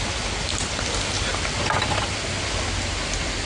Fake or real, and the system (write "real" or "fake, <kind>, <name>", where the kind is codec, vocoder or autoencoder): real